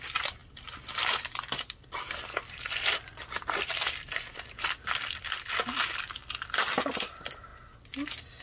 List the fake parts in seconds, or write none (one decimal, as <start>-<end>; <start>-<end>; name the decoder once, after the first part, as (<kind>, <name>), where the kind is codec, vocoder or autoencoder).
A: 0.4-5.4 (vocoder, BigVGAN v2); 6.2-6.8

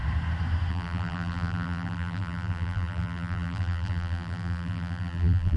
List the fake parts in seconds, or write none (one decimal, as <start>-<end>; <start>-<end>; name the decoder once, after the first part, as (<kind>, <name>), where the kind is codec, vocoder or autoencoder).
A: 0.7-5.6 (vocoder, BigVGAN v2)

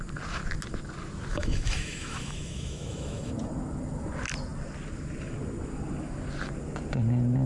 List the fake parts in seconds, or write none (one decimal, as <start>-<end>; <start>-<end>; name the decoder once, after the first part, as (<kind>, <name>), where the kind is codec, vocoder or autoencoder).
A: 1.3-3.3 (autoencoder, DAC-VAE)